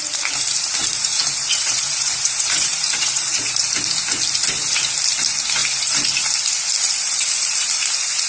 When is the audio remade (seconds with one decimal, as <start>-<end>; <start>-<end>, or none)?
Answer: 0.8-3.6